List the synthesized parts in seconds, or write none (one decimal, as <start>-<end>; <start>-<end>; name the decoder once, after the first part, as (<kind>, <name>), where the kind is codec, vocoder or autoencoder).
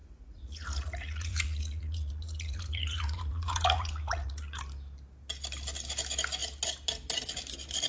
0.0-4.6 (vocoder, Vocos)